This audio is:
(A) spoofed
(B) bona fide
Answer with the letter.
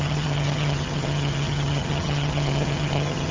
A